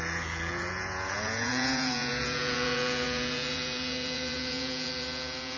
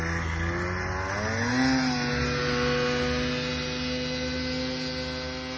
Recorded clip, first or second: second